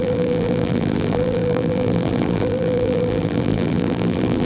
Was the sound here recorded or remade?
remade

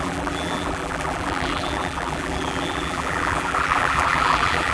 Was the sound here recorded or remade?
remade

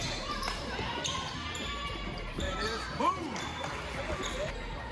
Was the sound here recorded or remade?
remade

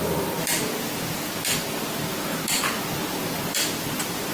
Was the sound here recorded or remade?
recorded